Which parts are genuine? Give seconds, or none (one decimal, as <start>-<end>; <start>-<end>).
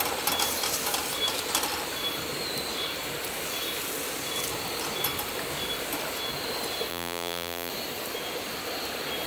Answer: 0.0-6.9; 7.7-9.3